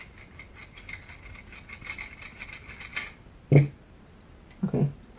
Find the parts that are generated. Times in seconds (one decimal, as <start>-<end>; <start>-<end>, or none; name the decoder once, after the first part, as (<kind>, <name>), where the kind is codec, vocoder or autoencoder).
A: none